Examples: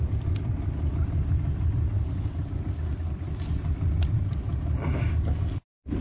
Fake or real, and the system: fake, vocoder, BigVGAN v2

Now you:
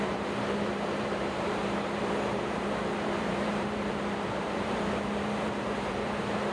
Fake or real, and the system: fake, vocoder, BigVGAN v2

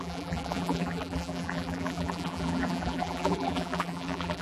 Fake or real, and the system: fake, vocoder, BigVGAN v2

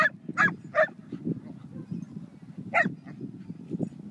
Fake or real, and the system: real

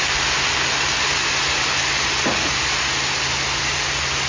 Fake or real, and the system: real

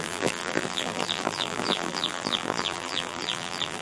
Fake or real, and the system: fake, vocoder, BigVGAN v2